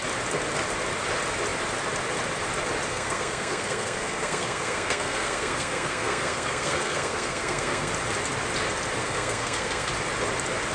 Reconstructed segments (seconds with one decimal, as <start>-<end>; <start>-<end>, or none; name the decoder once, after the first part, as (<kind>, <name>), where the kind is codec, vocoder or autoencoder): 2.9-7.9 (codec, SNAC); 9.0-9.9